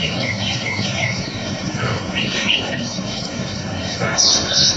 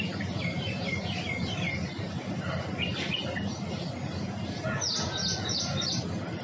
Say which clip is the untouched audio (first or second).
second